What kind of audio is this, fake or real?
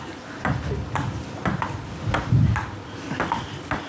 real